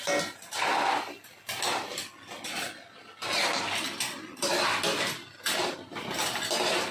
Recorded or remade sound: recorded